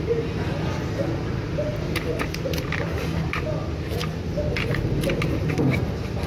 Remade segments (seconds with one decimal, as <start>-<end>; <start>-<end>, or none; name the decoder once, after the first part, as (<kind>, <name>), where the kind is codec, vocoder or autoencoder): none